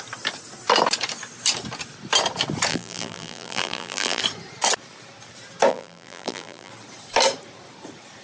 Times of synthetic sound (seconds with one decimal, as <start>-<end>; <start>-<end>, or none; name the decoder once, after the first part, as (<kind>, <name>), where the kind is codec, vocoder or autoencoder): 2.7-4.2 (vocoder, BigVGAN v2); 5.7-6.7